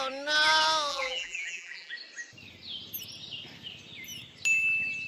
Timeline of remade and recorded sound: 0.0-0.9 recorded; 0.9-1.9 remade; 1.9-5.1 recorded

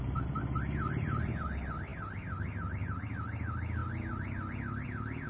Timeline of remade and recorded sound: 0.0-5.3 recorded

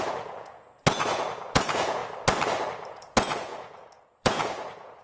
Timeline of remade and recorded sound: 0.0-2.0 remade; 2.0-2.9 recorded; 2.9-5.0 remade

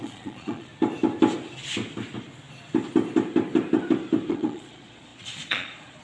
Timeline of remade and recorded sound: 0.0-0.7 remade; 0.7-4.3 recorded; 4.3-6.0 remade

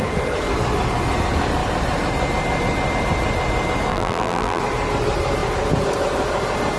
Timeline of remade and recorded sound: 0.0-3.9 recorded; 3.9-4.6 remade; 4.6-6.8 recorded

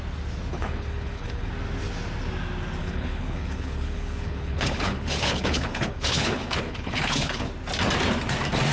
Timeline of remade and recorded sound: 0.0-0.5 recorded; 0.5-1.5 remade; 1.5-2.8 recorded; 2.8-7.5 remade; 7.5-8.7 recorded

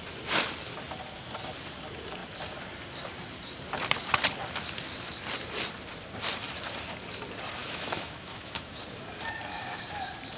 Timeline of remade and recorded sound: 0.0-7.6 recorded; 7.6-8.8 remade; 8.8-10.4 recorded

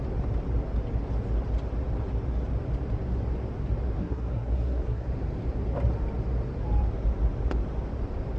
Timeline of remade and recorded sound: 0.0-4.0 recorded; 4.0-5.1 remade; 5.1-8.4 recorded